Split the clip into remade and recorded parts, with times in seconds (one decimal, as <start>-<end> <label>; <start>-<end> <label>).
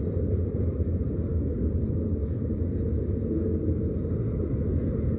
0.0-1.3 recorded; 1.3-2.6 remade; 2.6-5.2 recorded